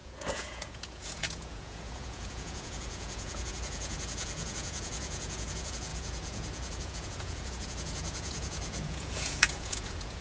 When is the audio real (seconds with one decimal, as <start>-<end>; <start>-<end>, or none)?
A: none